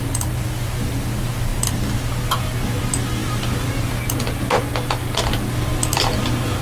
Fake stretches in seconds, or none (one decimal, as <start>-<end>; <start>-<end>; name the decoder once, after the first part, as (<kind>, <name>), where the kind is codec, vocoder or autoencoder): none